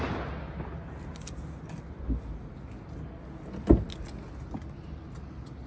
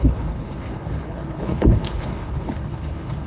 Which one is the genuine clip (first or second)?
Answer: first